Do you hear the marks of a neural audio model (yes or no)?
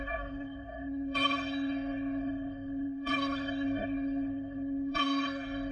yes